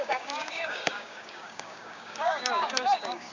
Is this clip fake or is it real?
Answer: fake